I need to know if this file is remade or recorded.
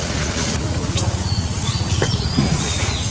remade